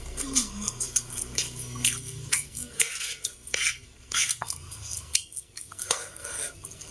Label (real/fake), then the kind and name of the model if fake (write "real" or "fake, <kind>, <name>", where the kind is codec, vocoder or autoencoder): fake, codec, SNAC